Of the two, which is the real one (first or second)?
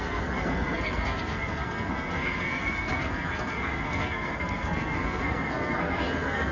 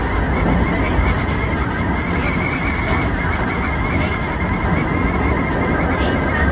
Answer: second